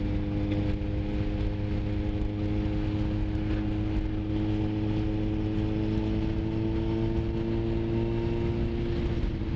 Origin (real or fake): real